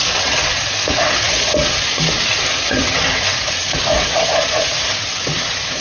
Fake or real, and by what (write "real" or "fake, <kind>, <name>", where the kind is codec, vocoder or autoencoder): fake, vocoder, WaveNeXt